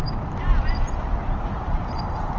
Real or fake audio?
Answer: fake